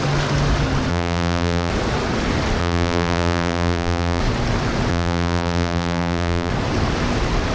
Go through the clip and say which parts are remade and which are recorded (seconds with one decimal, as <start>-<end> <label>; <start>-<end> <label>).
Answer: 0.0-0.9 recorded; 0.9-1.7 remade; 1.7-2.6 recorded; 2.6-4.2 remade; 4.2-4.9 recorded; 4.9-6.5 remade; 6.5-7.5 recorded